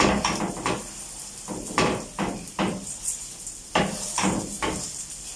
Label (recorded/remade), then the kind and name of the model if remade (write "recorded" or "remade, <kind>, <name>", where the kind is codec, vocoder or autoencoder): remade, vocoder, BigVGAN v2